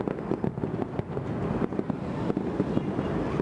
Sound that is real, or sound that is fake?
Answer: real